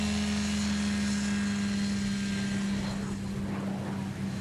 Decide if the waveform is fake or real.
real